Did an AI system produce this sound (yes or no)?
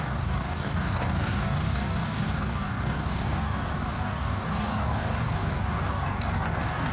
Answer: yes